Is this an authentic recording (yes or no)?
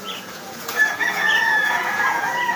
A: no